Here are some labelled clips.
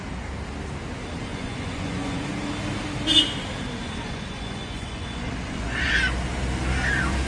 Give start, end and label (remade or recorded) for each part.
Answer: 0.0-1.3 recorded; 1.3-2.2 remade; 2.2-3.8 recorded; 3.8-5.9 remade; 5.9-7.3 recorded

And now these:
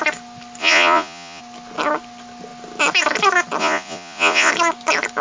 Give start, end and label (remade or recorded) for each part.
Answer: 0.0-0.6 recorded; 0.6-1.4 remade; 1.4-3.6 recorded; 3.6-4.5 remade; 4.5-5.2 recorded

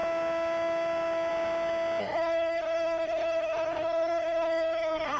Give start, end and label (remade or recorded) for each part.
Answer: 0.0-2.0 recorded; 2.0-5.2 remade

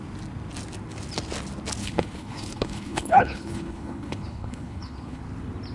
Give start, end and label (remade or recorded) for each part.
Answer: 0.0-1.8 recorded; 1.8-5.2 remade; 5.2-5.7 recorded

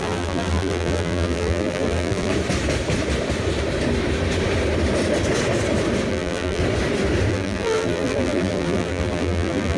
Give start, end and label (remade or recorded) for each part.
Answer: 0.0-2.3 remade; 2.3-6.1 recorded; 6.1-6.6 remade; 6.6-7.3 recorded; 7.3-9.8 remade